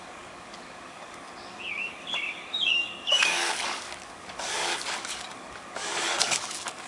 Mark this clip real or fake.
fake